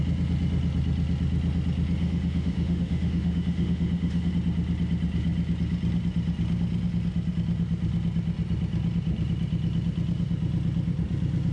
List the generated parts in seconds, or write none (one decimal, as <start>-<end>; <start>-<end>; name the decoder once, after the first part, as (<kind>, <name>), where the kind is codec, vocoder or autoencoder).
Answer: 2.0-4.3 (autoencoder, DAC-VAE)